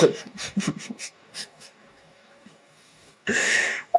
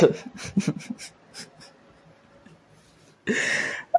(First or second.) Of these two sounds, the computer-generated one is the first